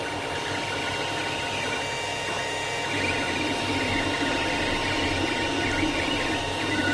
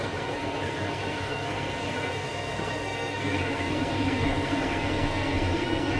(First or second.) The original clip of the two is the first